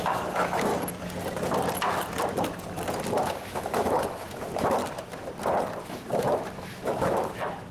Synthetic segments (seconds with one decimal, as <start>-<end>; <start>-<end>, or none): 0.0-0.7; 3.2-4.8; 5.8-7.7